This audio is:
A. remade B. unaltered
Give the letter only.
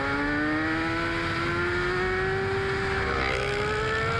B